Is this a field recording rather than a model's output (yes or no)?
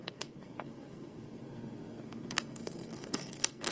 no